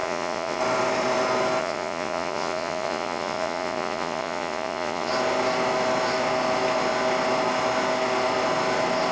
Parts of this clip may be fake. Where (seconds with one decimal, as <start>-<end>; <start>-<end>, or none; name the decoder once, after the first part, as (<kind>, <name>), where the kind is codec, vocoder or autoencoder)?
0.0-0.6 (vocoder, Vocos); 1.6-5.1